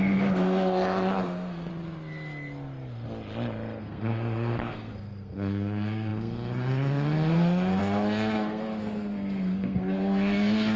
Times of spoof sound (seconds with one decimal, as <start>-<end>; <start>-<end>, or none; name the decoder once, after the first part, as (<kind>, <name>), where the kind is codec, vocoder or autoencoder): 0.0-1.7 (codec, SNAC); 3.8-10.8